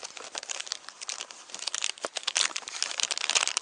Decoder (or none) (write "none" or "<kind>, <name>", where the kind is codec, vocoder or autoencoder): vocoder, BigVGAN v2